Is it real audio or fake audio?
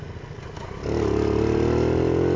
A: real